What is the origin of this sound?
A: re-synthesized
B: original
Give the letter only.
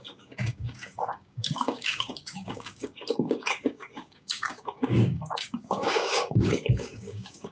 A